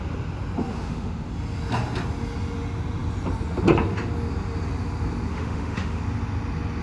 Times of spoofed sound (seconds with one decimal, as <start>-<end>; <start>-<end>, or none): 0.7-1.3; 5.3-6.0